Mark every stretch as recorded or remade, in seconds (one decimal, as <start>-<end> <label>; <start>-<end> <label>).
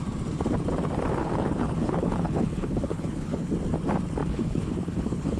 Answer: 0.0-1.2 recorded; 1.2-3.5 remade; 3.5-4.2 recorded; 4.2-5.4 remade